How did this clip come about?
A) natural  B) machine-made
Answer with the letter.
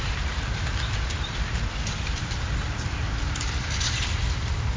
A